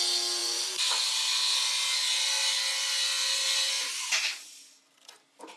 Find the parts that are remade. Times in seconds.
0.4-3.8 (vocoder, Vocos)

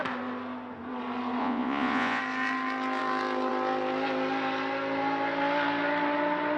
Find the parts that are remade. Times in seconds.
1.4-2.2 (vocoder, Vocos)

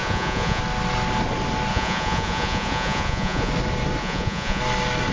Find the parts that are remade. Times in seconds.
0.0-0.6 (vocoder, Vocos); 1.7-3.5; 4.0-4.6

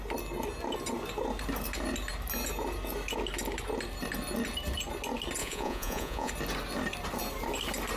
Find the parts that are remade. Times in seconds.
5.4-6.3 (vocoder, Vocos)

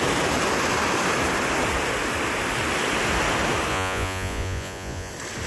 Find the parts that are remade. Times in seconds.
3.7-5.1 (vocoder, Vocos)

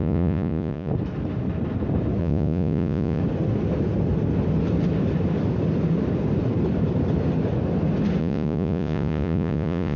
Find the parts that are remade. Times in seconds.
0.0-0.9 (vocoder, Vocos); 2.2-3.2; 8.2-10.0